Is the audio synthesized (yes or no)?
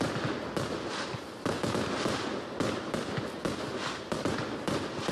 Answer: no